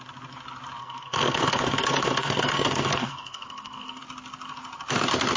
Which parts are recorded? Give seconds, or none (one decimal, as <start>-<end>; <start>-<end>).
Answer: 0.0-0.8; 4.0-5.4